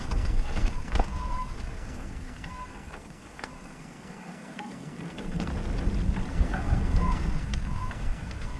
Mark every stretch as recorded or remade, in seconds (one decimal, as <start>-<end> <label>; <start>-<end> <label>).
0.0-5.5 remade; 5.5-6.3 recorded; 6.3-8.6 remade